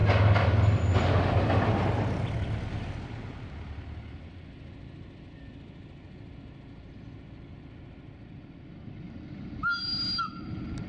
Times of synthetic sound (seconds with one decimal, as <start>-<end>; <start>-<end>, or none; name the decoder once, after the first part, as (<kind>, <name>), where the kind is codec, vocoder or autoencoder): none